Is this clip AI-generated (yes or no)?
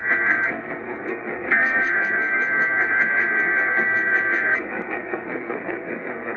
yes